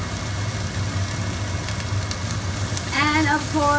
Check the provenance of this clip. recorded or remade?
recorded